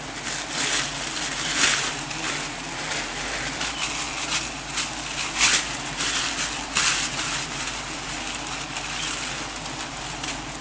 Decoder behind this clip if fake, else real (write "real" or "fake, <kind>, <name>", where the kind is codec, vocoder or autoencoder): real